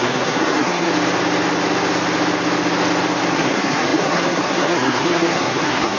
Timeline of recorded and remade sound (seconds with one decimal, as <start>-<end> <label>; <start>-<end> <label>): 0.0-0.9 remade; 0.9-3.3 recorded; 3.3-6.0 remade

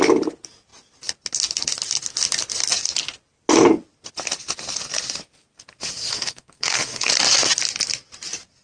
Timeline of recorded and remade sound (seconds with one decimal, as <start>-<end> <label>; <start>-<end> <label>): 0.0-6.1 recorded; 6.1-7.1 remade; 7.1-8.6 recorded

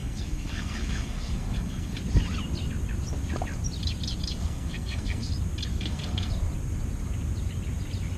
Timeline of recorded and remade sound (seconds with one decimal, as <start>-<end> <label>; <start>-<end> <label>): 0.0-2.0 remade; 2.0-4.4 recorded; 4.4-5.3 remade; 5.3-5.7 recorded; 5.7-6.3 remade; 6.3-8.2 recorded